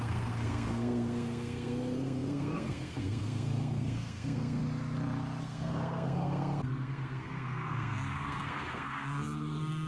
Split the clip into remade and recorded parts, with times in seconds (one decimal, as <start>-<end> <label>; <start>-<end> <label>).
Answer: 0.0-4.6 remade; 4.6-5.4 recorded; 5.4-9.9 remade